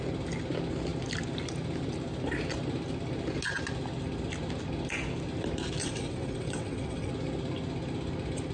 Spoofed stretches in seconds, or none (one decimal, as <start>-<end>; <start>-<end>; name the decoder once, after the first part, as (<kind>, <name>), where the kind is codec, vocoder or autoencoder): 5.8-7.1 (vocoder, WaveNeXt)